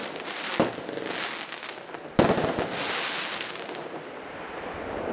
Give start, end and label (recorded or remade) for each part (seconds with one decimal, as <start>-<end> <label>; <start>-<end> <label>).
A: 0.0-0.5 remade; 0.5-3.4 recorded; 3.4-5.1 remade